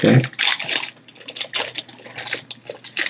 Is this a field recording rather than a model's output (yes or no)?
yes